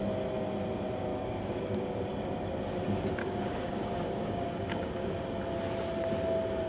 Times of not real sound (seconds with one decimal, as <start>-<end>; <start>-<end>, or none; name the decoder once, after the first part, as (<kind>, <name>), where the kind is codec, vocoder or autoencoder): 1.1-2.0 (codec, DAC); 3.2-5.2